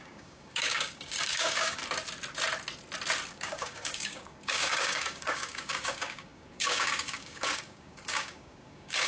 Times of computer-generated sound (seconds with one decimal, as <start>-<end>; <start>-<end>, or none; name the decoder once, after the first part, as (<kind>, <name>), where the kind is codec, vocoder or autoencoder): 0.0-1.8 (codec, DAC); 3.3-9.1